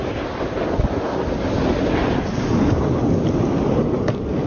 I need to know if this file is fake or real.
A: real